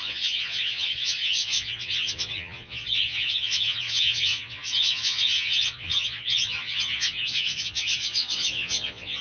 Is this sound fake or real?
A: fake